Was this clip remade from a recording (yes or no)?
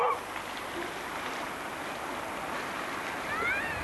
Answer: no